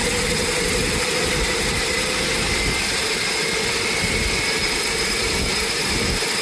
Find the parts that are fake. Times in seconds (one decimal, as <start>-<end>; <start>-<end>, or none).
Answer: 3.8-6.4